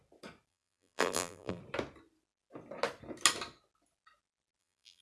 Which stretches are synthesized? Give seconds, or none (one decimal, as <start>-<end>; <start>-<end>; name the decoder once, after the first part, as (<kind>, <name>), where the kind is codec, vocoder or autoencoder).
0.5-1.6 (vocoder, BigVGAN v2); 4.6-5.0